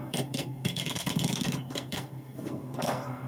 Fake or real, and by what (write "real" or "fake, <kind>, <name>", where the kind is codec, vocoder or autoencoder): fake, codec, SNAC